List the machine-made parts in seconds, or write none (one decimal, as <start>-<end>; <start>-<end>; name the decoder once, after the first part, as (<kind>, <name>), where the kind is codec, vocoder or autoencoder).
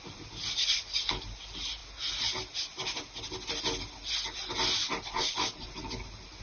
none